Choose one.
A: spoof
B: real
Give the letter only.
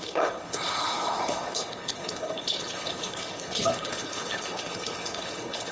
A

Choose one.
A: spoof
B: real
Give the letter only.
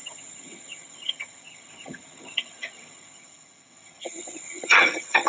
A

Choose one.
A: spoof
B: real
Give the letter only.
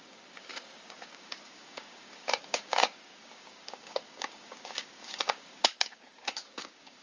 A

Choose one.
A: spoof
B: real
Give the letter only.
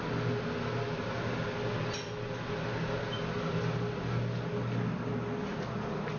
B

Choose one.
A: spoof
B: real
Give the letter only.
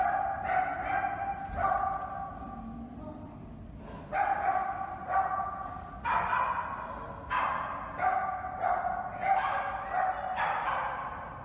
B